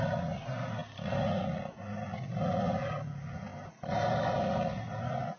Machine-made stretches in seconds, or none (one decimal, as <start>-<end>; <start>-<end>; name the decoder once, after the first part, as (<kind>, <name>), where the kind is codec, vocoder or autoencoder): none